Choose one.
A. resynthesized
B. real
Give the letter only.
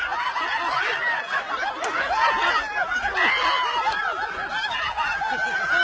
B